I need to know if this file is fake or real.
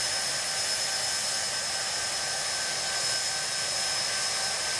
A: real